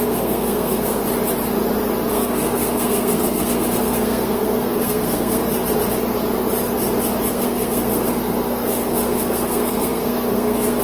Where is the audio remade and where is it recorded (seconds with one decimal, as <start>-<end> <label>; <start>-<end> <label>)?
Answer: 0.0-1.0 remade; 1.0-2.1 recorded; 2.1-5.4 remade; 5.4-7.3 recorded; 7.3-10.8 remade